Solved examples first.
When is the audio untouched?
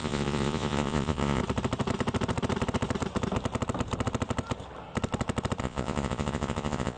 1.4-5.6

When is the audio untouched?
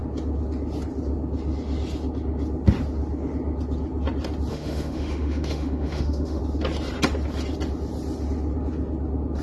0.0-4.5; 6.4-9.4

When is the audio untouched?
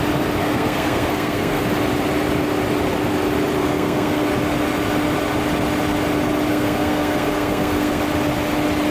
0.0-0.4; 1.6-3.6; 4.2-6.5; 8.0-8.9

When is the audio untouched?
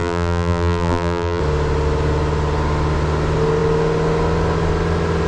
1.4-5.3